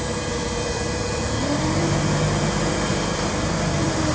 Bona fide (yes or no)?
no